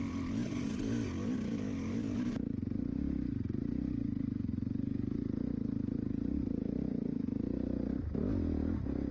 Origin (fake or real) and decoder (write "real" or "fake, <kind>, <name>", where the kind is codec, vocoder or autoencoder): real